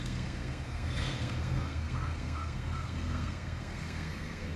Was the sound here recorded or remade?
remade